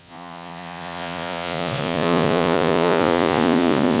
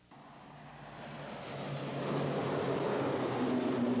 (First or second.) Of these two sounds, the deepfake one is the first